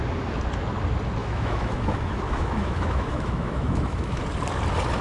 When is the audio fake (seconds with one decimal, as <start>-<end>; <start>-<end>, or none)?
1.2-4.2